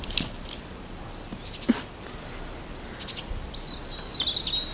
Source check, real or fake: real